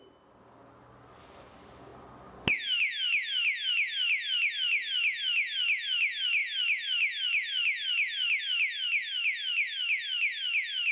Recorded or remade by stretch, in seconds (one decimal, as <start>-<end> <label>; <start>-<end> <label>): 0.0-10.9 recorded